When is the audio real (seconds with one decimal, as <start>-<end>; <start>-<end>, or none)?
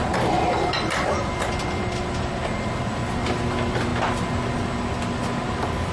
0.0-5.9